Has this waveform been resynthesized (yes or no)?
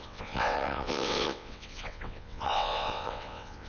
yes